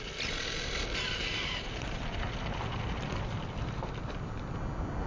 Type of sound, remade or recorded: recorded